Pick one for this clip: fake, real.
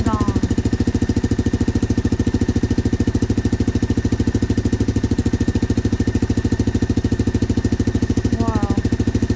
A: real